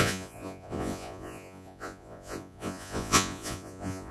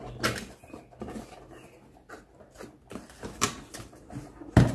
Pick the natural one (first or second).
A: second